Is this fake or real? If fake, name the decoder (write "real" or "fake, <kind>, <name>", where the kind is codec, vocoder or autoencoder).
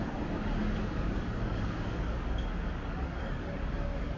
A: fake, codec, DAC